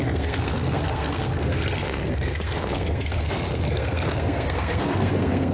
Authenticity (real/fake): fake